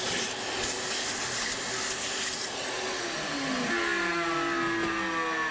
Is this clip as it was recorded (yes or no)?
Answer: yes